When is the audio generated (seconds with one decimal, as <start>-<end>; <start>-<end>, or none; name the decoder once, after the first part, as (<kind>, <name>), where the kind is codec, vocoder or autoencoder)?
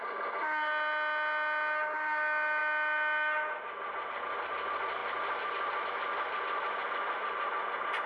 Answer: none